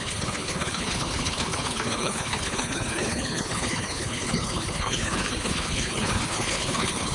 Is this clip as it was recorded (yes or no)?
no